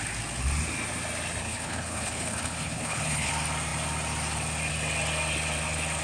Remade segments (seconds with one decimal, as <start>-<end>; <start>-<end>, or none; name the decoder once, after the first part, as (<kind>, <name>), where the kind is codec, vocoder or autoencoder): 1.4-3.3 (codec, HILCodec)